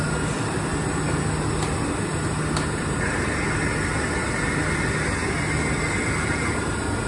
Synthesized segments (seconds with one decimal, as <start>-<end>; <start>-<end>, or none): none